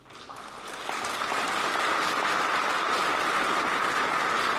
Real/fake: real